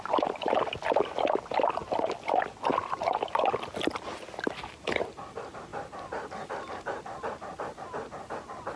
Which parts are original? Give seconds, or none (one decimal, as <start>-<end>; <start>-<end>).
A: 0.0-8.8